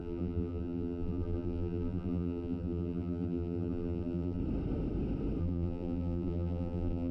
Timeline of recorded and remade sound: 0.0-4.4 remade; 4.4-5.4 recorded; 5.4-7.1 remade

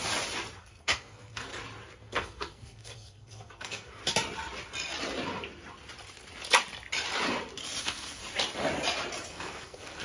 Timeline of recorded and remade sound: 0.0-0.6 recorded; 0.6-1.5 remade; 1.5-2.0 recorded; 2.0-4.0 remade; 4.0-7.8 recorded; 7.8-8.2 remade; 8.2-9.3 recorded; 9.3-10.0 remade

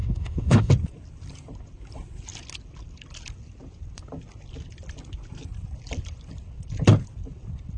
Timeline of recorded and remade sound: 0.0-0.7 remade; 0.7-7.8 recorded

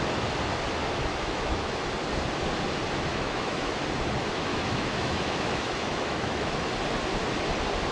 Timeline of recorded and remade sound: 0.0-1.1 recorded; 1.1-1.9 remade; 1.9-3.1 recorded; 3.1-3.7 remade; 3.7-4.5 recorded; 4.5-6.7 remade; 6.7-7.9 recorded